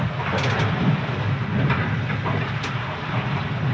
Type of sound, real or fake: real